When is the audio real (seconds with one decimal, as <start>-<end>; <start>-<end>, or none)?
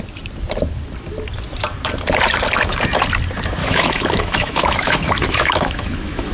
0.0-3.6